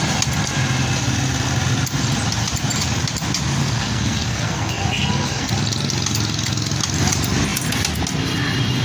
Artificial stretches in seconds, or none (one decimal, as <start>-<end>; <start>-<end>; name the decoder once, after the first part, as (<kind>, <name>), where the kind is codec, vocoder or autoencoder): 3.6-5.5 (codec, SNAC)